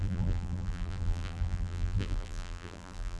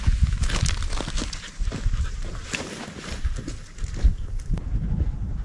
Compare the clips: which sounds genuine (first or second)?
second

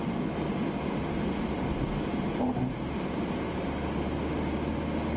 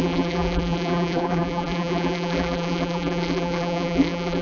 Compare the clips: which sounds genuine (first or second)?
first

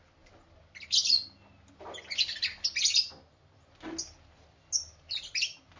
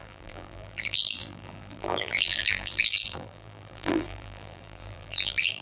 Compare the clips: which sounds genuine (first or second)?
first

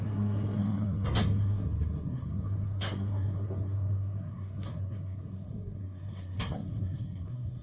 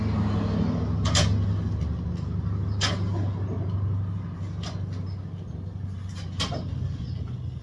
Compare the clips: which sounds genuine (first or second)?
second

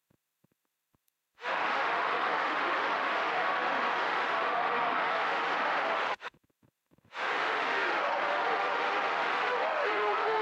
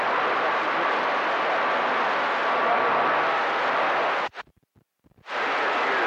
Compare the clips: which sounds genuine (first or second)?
second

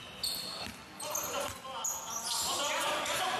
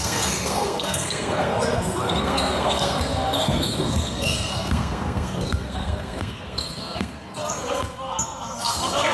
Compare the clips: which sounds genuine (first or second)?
first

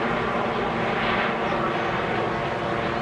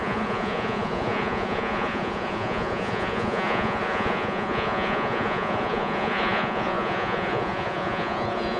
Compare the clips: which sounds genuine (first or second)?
first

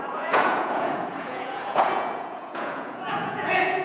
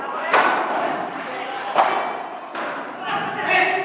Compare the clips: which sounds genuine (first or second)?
second